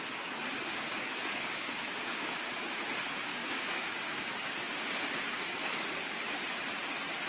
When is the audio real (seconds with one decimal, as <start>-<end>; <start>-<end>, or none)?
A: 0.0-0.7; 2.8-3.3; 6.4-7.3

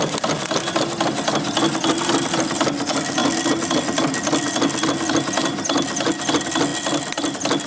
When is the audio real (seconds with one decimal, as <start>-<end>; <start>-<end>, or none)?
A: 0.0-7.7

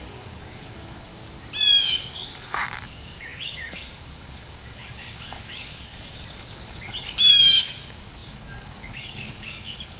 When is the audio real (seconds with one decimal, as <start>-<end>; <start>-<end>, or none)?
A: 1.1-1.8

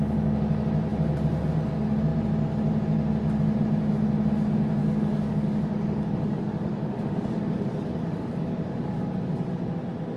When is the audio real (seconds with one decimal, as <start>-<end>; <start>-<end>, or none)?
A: 0.0-4.8; 9.0-10.2